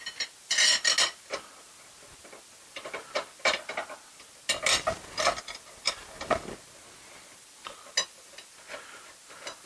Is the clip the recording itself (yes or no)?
yes